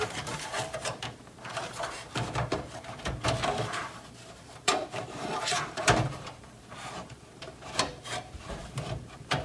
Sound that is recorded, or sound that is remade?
remade